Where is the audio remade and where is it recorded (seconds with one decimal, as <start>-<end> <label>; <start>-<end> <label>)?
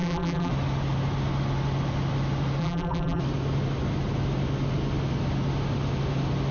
0.0-0.5 remade; 0.5-2.6 recorded; 2.6-3.2 remade; 3.2-6.5 recorded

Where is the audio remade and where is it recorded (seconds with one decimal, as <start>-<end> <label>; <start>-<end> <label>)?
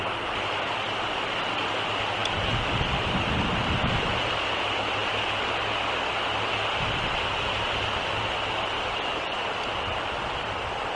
0.0-11.0 recorded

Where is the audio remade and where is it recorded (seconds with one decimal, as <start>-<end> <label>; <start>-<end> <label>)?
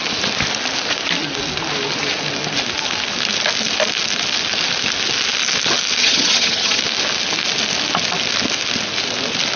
0.0-6.0 recorded; 6.0-6.8 remade; 6.8-9.6 recorded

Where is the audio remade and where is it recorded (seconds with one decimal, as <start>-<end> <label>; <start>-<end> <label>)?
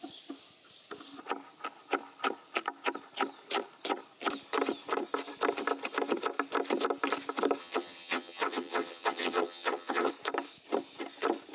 0.0-7.6 recorded; 7.6-10.1 remade; 10.1-11.5 recorded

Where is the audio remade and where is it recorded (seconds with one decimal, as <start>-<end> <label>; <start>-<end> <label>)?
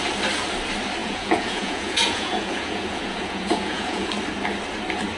0.0-1.0 recorded; 1.0-4.1 remade; 4.1-5.2 recorded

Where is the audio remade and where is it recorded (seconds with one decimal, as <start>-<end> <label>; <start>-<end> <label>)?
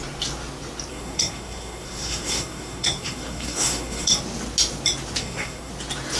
0.0-0.9 recorded; 0.9-4.2 remade; 4.2-5.2 recorded; 5.2-5.7 remade; 5.7-6.2 recorded